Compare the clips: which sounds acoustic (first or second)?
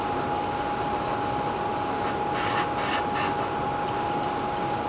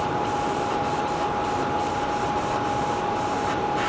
first